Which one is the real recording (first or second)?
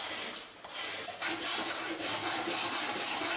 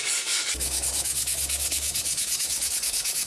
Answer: first